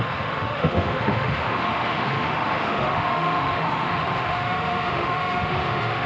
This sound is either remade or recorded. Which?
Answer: remade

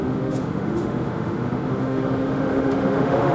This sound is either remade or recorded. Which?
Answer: remade